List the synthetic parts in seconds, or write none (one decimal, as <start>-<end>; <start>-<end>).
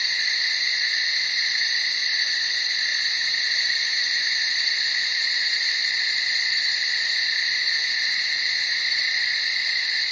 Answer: 2.9-6.0